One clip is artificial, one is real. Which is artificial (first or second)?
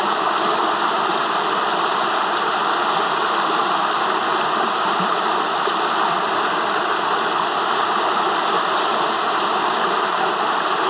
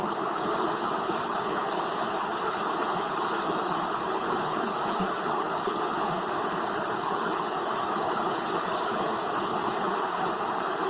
second